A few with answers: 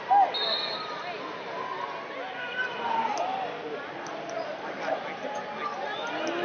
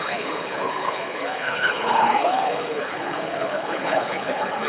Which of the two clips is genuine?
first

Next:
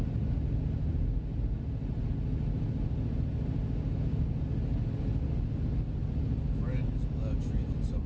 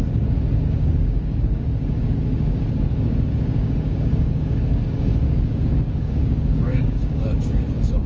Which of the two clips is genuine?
first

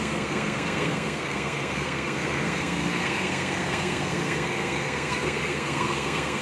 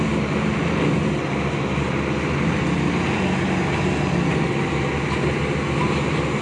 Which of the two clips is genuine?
second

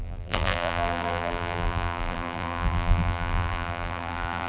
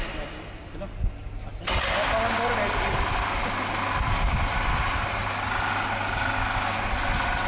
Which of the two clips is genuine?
second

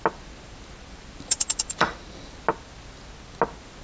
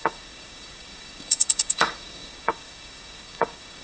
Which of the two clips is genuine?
first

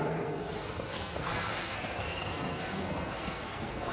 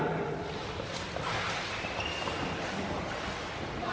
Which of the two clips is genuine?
second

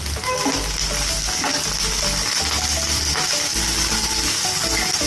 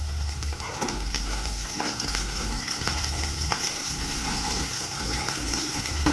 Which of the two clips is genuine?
first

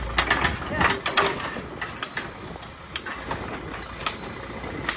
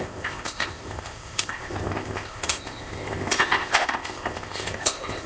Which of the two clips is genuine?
first